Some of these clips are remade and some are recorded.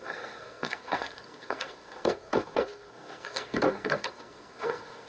remade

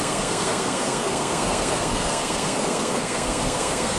remade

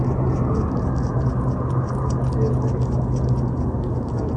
recorded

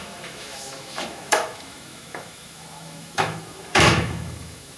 remade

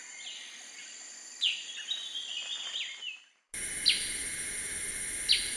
recorded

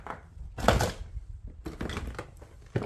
recorded